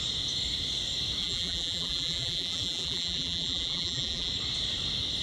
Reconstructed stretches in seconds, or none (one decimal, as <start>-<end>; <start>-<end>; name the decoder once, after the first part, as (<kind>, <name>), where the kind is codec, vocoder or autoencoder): 1.2-4.3 (vocoder, BigVGAN v2)

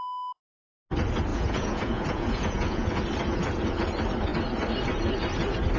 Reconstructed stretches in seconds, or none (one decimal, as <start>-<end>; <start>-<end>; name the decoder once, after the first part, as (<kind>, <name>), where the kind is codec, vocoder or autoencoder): 1.3-3.0 (vocoder, Vocos)